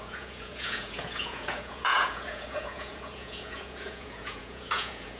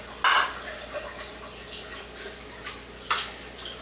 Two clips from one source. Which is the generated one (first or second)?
first